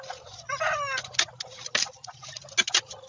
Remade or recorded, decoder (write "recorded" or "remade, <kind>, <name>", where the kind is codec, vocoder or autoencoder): recorded